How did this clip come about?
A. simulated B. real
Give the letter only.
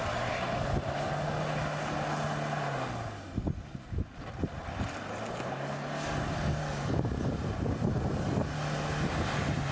B